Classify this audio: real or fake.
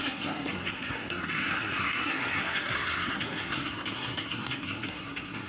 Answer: fake